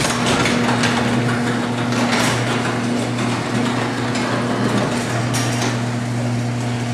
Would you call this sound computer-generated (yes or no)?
no